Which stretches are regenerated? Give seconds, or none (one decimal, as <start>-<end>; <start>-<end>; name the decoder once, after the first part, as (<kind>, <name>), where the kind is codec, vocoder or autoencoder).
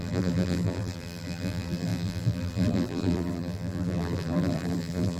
0.0-5.2 (vocoder, BigVGAN v2)